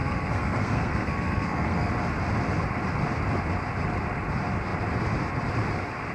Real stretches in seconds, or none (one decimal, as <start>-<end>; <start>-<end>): 1.9-6.1